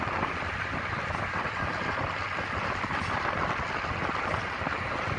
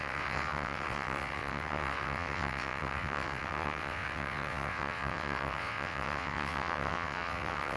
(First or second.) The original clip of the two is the first